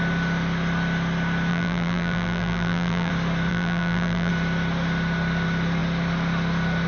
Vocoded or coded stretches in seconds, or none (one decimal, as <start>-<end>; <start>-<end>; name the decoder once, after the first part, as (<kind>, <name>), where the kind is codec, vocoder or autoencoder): 1.5-3.1 (vocoder, BigVGAN v2); 3.5-4.3